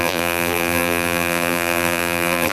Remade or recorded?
remade